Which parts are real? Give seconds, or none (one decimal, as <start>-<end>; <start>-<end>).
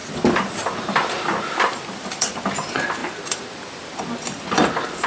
2.4-3.0; 4.0-5.1